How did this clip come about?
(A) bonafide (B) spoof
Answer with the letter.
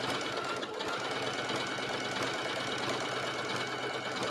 A